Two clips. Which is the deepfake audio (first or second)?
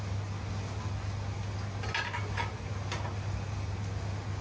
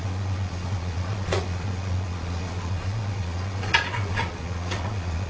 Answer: second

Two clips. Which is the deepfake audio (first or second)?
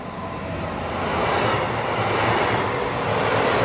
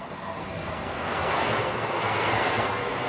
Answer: second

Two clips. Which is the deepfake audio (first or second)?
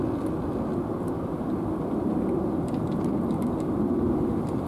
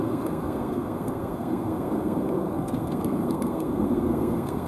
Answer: second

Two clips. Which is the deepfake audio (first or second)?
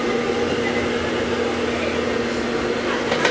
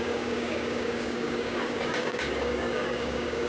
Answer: second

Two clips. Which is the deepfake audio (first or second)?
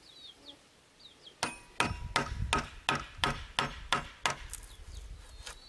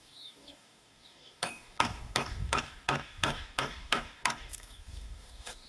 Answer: second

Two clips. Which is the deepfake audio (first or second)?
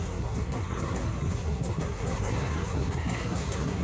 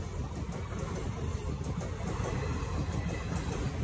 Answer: first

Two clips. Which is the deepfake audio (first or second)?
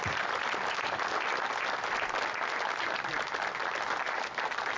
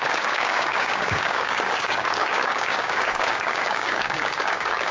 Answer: second